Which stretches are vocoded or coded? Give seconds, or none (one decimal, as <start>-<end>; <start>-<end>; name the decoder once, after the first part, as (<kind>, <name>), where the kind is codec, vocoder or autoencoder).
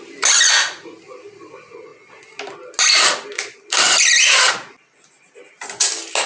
none